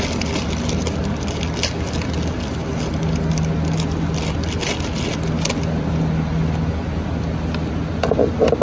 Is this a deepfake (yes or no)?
no